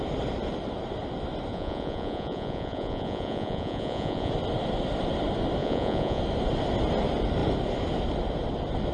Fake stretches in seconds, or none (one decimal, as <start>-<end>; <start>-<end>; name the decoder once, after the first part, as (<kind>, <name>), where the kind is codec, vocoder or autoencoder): 1.5-4.3 (vocoder, Vocos); 5.6-6.2